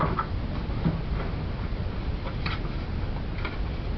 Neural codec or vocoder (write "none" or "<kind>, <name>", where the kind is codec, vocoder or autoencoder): none